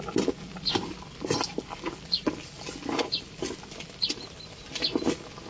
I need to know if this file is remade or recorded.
recorded